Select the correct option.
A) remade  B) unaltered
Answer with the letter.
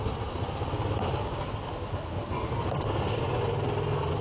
B